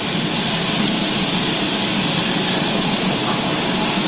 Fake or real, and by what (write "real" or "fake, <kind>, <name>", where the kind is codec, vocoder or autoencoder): real